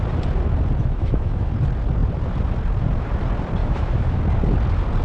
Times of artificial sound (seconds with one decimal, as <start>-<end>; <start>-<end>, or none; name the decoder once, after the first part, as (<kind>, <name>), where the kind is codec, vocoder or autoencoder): 0.8-1.5 (autoencoder, DAC-VAE); 3.6-4.2